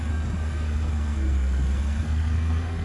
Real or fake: fake